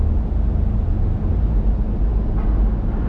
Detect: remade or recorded recorded